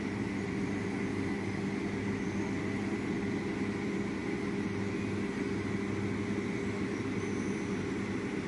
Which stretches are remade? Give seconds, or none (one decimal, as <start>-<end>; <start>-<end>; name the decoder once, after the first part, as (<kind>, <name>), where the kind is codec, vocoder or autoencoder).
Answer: none